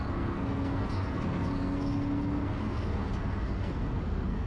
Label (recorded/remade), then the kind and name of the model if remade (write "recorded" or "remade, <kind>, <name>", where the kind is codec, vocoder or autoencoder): remade, codec, SNAC